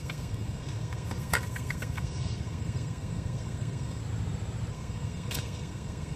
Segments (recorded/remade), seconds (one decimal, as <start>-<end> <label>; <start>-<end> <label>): 0.0-4.0 remade; 4.0-4.7 recorded; 4.7-6.2 remade